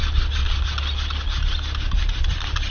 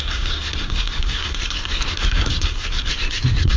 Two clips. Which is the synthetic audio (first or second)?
second